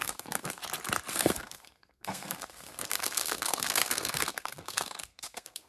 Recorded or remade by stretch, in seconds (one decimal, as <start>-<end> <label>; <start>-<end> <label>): 0.0-0.6 remade; 0.6-1.1 recorded; 1.1-5.7 remade